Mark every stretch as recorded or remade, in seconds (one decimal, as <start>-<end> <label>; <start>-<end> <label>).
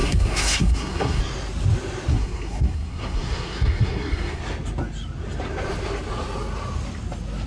0.0-1.2 remade; 1.2-2.1 recorded; 2.1-4.4 remade; 4.4-7.5 recorded